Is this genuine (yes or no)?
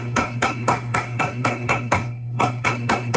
no